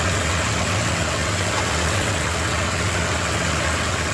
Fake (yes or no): yes